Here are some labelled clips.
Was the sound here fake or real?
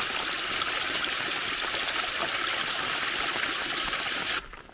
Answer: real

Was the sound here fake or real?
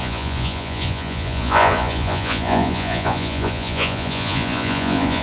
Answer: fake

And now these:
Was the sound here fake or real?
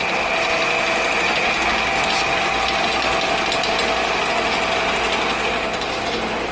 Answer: real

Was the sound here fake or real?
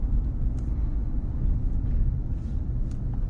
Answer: real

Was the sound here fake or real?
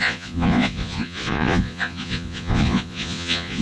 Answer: fake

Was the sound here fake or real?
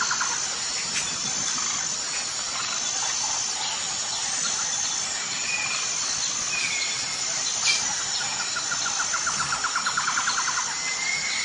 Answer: real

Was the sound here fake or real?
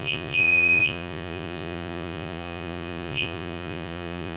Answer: fake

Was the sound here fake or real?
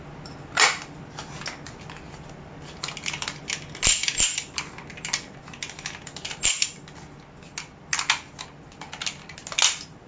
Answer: real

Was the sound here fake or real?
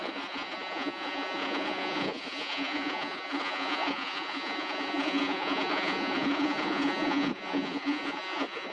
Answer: fake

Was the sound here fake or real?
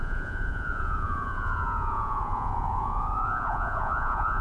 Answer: fake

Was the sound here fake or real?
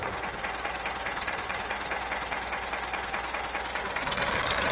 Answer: fake